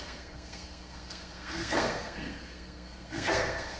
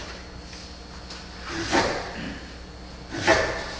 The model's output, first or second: first